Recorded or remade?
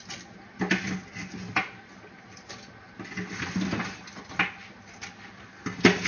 recorded